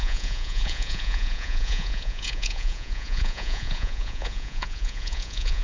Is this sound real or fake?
fake